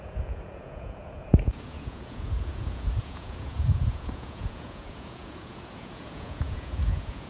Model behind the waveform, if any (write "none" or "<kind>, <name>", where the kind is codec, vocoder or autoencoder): vocoder, Vocos